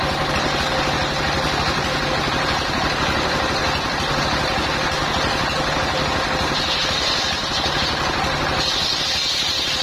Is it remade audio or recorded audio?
recorded